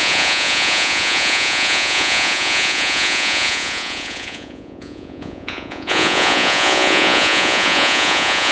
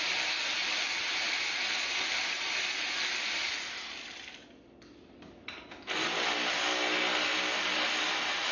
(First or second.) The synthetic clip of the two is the first